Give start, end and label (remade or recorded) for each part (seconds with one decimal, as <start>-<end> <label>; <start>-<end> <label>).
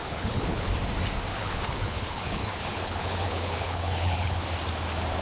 0.0-0.7 remade; 0.7-1.3 recorded; 1.3-4.4 remade; 4.4-5.2 recorded